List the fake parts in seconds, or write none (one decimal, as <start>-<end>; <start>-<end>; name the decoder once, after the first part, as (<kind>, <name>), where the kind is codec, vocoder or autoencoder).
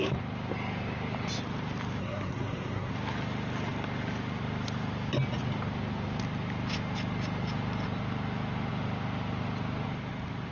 2.0-2.9 (codec, SNAC)